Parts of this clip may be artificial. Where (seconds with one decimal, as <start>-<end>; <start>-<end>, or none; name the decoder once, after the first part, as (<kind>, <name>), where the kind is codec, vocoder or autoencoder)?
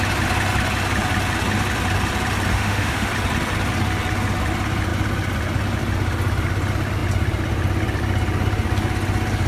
2.5-3.1 (autoencoder, DAC-VAE)